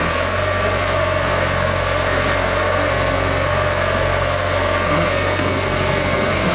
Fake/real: fake